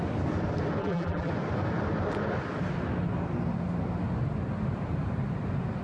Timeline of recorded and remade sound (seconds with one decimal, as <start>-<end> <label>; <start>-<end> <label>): 0.0-0.8 recorded; 0.8-1.3 remade; 1.3-5.8 recorded